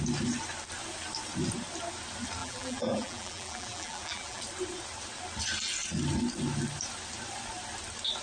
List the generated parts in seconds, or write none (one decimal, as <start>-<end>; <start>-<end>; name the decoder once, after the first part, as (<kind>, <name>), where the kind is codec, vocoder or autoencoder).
2.4-4.4 (vocoder, BigVGAN v2)